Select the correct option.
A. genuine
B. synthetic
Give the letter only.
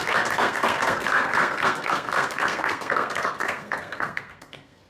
B